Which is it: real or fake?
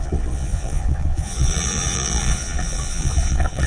fake